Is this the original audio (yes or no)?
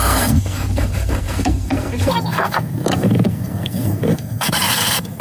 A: no